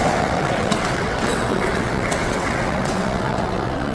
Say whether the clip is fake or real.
fake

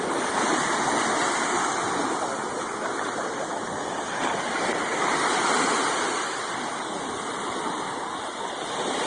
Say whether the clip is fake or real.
fake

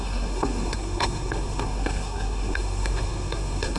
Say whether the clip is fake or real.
fake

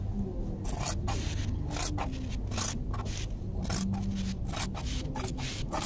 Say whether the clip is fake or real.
real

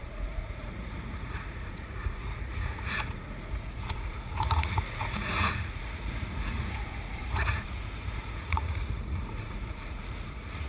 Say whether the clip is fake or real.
fake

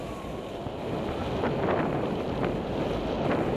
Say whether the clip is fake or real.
real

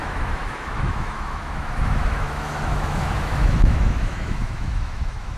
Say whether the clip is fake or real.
fake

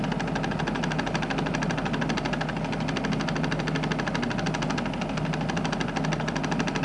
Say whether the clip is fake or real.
real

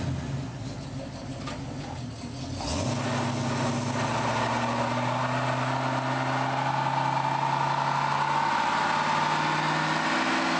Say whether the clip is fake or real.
real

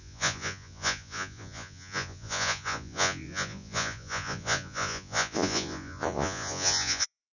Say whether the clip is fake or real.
fake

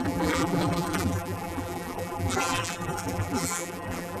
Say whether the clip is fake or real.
fake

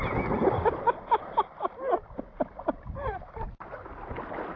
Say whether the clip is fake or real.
real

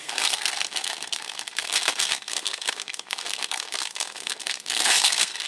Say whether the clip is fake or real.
fake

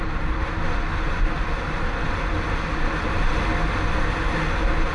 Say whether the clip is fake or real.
real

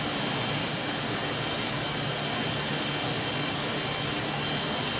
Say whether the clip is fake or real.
real